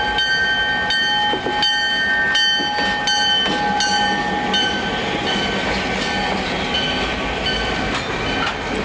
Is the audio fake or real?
real